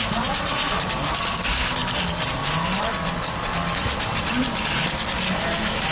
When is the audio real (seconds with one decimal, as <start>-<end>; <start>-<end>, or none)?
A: 0.7-5.9